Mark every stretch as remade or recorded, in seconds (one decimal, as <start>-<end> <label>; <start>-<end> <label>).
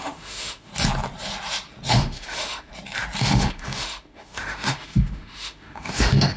0.0-0.7 remade; 0.7-1.9 recorded; 1.9-2.7 remade; 2.7-3.2 recorded; 3.2-6.4 remade